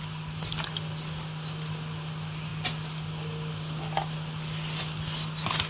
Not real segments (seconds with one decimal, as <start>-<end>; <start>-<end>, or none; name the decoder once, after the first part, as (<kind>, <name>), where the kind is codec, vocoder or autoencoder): none